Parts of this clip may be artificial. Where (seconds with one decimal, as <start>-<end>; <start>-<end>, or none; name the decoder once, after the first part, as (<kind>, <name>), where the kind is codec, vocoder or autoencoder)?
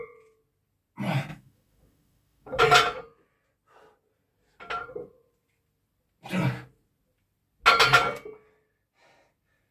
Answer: 1.3-2.6 (autoencoder, DAC-VAE)